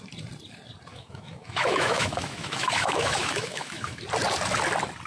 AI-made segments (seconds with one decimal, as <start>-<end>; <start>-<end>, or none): 0.9-4.0